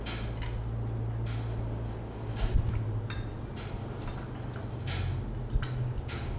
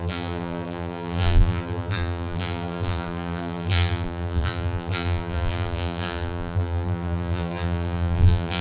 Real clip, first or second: first